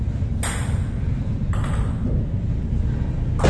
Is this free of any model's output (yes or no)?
yes